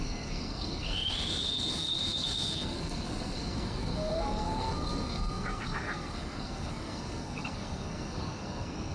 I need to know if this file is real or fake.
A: fake